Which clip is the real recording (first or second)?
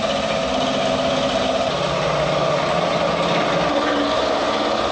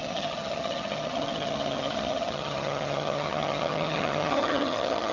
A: first